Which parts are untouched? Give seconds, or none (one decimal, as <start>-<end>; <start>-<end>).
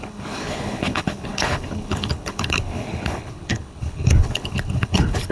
none